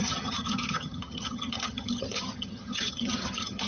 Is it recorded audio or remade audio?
remade